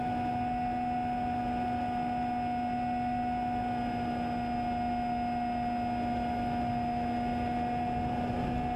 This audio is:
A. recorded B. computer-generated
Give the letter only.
A